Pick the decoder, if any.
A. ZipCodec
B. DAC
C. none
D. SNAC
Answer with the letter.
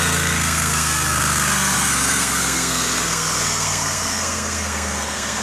D